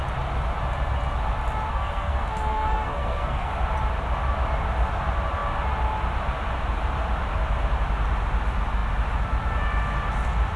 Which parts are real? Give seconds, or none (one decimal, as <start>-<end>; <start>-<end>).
0.0-1.7; 3.5-10.6